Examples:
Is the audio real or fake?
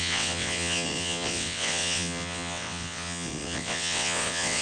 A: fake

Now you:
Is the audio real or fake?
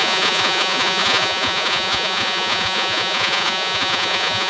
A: fake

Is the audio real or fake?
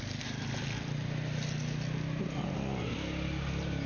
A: real